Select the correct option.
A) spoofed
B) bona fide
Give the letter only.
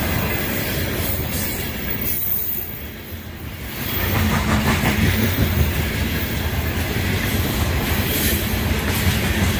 B